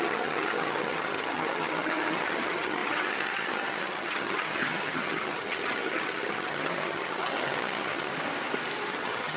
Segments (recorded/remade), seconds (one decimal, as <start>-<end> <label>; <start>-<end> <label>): 0.0-8.1 remade; 8.1-8.9 recorded; 8.9-9.4 remade